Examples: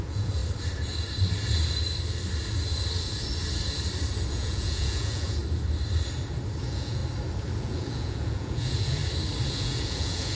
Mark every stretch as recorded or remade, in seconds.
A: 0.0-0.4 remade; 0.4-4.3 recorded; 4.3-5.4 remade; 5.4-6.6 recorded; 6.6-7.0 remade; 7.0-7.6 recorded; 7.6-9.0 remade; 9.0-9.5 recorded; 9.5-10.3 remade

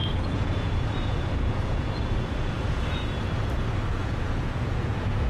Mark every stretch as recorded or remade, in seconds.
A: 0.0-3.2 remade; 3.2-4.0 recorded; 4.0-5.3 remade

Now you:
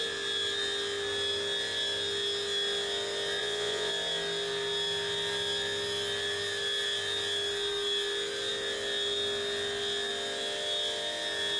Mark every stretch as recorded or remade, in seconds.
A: 0.0-3.4 recorded; 3.4-3.9 remade; 3.9-11.6 recorded